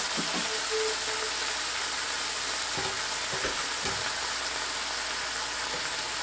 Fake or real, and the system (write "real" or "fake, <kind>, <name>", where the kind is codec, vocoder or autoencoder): real